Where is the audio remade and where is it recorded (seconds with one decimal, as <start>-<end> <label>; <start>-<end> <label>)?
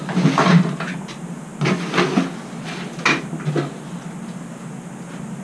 0.0-5.4 recorded